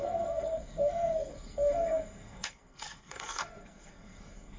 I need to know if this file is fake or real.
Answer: fake